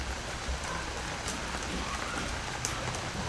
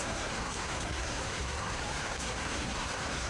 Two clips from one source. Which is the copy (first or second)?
second